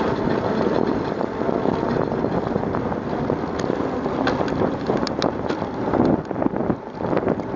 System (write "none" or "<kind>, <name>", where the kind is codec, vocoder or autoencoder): none